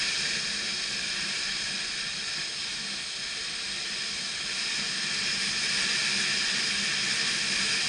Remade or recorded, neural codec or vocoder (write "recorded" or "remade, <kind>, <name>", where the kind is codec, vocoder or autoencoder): recorded